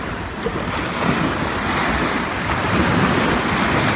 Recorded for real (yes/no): yes